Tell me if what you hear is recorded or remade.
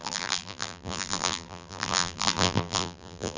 remade